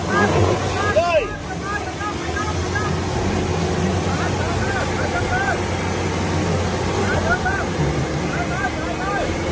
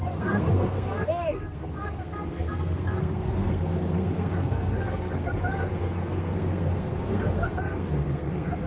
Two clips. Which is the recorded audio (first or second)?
first